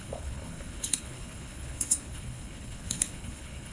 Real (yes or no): no